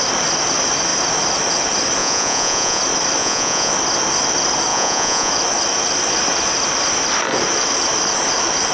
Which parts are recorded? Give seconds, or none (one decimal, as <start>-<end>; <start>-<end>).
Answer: 0.0-2.0; 2.8-3.2; 3.7-4.7; 5.3-8.7